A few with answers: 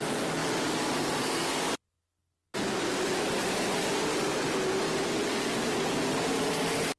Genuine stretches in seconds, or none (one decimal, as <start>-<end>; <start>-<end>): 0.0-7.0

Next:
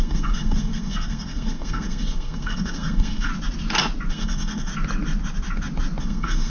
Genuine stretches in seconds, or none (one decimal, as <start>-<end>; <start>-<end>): 3.3-4.1; 4.7-6.0

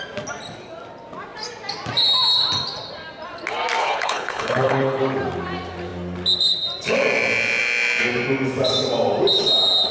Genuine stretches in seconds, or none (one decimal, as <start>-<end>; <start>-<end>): 0.0-3.8; 5.0-9.9

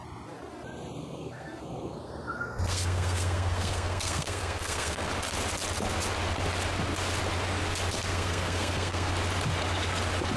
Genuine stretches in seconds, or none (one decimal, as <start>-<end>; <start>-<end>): 0.0-1.0; 5.1-8.1; 9.1-10.4

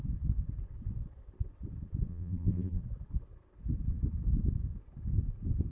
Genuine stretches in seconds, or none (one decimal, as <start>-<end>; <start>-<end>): 0.0-2.1; 2.8-5.7